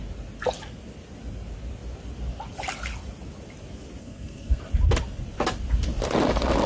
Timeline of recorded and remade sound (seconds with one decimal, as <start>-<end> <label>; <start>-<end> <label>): 0.0-4.0 recorded; 4.0-4.6 remade; 4.6-6.7 recorded